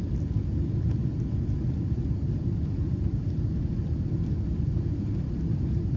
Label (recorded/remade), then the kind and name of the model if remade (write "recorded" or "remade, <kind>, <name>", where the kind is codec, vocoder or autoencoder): remade, vocoder, BigVGAN v2